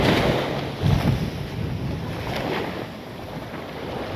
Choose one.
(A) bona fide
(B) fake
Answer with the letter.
A